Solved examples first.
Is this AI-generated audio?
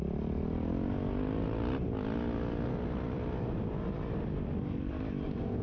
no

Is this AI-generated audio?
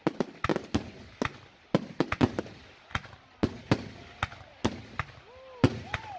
no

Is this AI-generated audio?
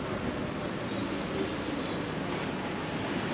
no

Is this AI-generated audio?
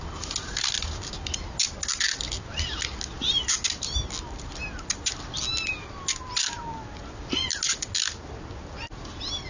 no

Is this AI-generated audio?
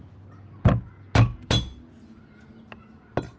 no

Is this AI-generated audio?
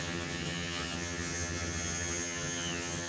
yes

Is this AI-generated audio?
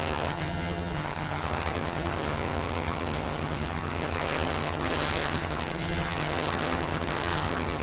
yes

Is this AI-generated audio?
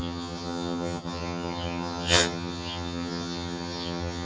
yes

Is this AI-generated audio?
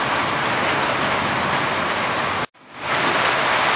no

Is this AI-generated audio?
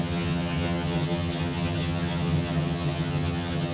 yes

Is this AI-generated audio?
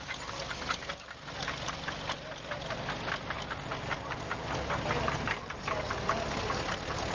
no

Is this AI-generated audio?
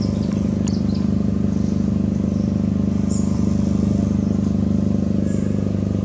no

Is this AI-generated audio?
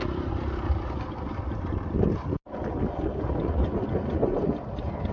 no